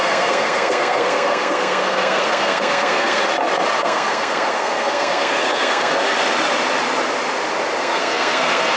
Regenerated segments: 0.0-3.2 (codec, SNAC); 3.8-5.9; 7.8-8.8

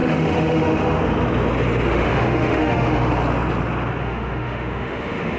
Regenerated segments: 0.0-1.0 (autoencoder, DAC-VAE); 1.9-3.1; 4.0-5.4

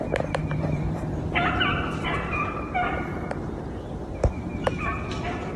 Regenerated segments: 0.0-5.6 (vocoder, BigVGAN v2)

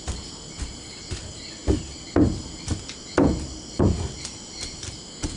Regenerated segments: none